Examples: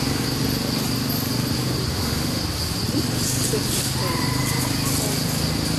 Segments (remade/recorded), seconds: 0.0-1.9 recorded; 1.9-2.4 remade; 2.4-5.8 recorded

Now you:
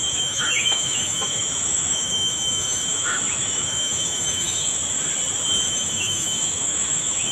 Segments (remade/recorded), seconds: 0.0-4.8 remade; 4.8-5.7 recorded; 5.7-7.3 remade

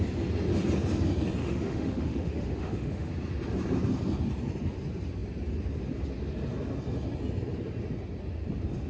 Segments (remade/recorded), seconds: 0.0-1.4 recorded; 1.4-3.1 remade; 3.1-8.9 recorded

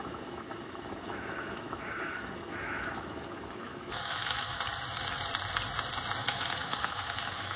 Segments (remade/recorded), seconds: 0.0-4.6 remade; 4.6-6.2 recorded; 6.2-7.6 remade

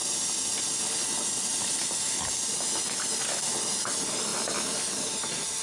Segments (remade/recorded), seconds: 0.0-5.6 recorded